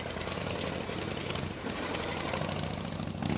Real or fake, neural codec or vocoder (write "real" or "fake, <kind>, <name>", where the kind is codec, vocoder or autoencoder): real